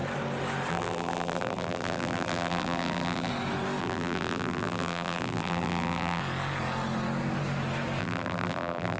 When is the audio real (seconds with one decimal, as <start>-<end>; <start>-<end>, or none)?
0.0-0.7; 3.3-3.8; 6.2-8.0